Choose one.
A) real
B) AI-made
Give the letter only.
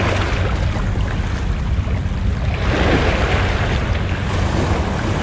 A